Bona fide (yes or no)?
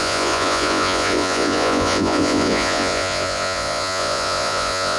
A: no